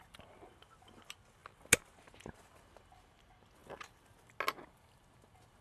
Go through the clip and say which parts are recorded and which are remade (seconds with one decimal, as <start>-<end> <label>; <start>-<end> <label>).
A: 0.0-5.6 recorded